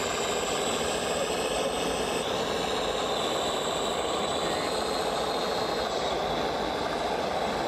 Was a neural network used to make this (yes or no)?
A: no